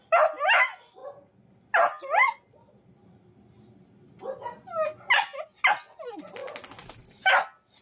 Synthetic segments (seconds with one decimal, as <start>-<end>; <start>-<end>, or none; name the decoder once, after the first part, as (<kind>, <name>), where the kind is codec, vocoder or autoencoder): none